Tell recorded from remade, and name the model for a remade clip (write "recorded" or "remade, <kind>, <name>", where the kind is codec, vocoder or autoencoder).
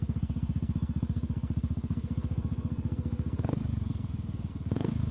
remade, codec, SNAC